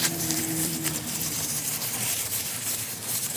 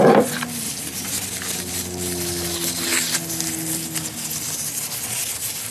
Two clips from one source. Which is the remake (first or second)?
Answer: first